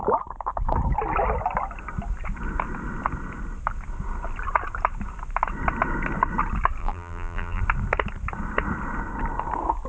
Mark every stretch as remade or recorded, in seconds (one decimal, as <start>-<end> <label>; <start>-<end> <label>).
0.0-6.8 recorded; 6.8-7.6 remade; 7.6-9.9 recorded